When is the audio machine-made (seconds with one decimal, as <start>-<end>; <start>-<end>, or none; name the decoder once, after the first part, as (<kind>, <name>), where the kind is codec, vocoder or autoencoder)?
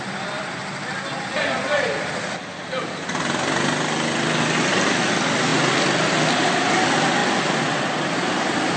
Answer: none